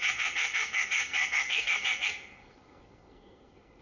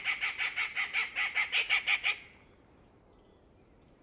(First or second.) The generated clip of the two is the first